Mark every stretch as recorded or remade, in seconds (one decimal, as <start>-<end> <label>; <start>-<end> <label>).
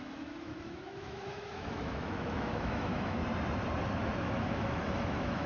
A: 0.0-3.2 remade; 3.2-3.9 recorded; 3.9-5.5 remade